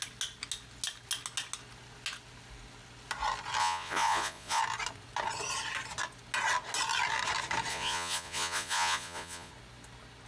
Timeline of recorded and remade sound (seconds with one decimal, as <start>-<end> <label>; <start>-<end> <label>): 0.0-3.6 recorded; 3.6-4.6 remade; 4.6-7.7 recorded; 7.7-9.5 remade; 9.5-10.3 recorded